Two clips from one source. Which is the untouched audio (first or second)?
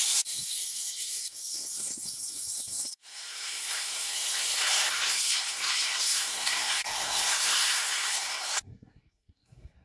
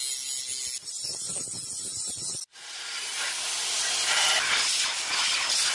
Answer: second